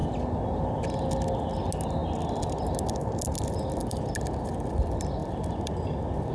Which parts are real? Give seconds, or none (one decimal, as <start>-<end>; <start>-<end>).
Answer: 0.0-5.2